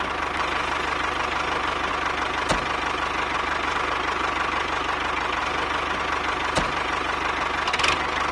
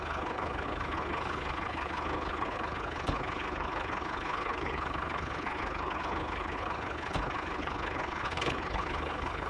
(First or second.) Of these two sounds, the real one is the first